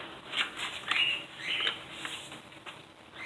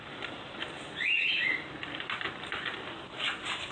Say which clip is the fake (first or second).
second